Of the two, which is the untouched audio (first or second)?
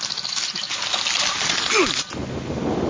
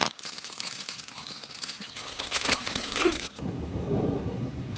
first